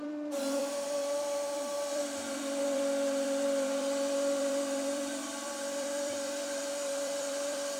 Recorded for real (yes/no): no